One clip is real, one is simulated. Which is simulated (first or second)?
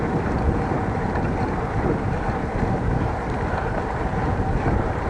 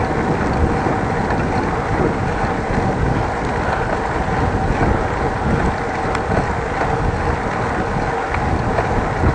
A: first